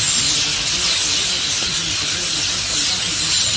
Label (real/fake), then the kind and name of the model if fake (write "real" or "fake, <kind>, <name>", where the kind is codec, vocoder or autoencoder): real